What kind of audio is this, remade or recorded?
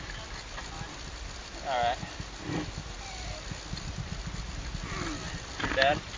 recorded